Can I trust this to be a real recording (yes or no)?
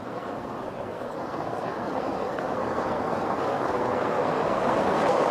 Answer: no